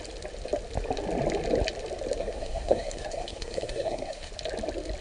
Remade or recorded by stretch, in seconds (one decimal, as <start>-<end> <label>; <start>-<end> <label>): 0.0-2.2 recorded; 2.2-4.3 remade; 4.3-5.0 recorded